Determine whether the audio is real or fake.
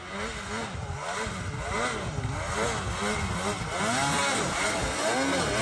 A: real